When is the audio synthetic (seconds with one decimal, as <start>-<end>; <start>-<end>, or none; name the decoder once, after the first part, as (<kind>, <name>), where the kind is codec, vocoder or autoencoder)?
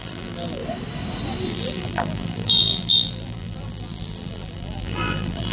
0.0-0.6 (vocoder, BigVGAN v2); 1.5-5.5